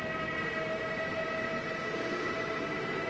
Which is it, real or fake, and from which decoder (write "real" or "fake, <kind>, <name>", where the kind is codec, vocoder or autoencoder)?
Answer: real